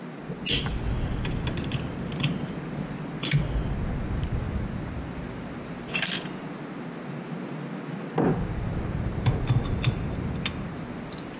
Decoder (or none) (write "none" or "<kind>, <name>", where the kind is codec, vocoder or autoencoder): none